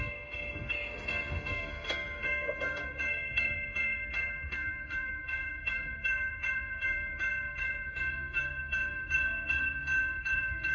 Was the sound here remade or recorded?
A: remade